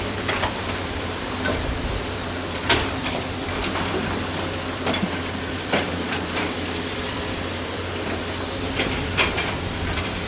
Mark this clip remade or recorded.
remade